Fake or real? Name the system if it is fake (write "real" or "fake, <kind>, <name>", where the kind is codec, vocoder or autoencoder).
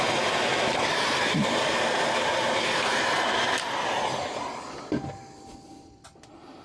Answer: real